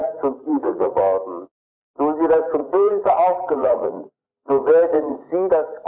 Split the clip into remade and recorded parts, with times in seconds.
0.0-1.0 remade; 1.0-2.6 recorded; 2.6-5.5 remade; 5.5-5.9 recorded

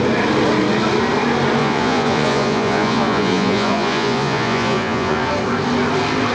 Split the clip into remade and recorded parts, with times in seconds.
0.0-1.6 recorded; 1.6-5.3 remade; 5.3-6.3 recorded

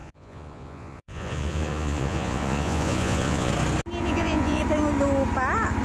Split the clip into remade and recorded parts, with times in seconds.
0.0-3.5 remade; 3.5-4.0 recorded; 4.0-4.6 remade; 4.6-5.8 recorded

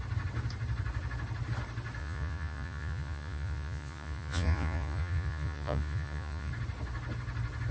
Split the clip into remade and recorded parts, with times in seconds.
0.0-2.0 recorded; 2.0-6.5 remade; 6.5-7.7 recorded

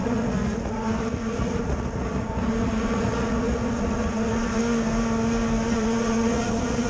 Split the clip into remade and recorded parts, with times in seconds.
0.0-4.6 remade; 4.6-5.7 recorded; 5.7-6.9 remade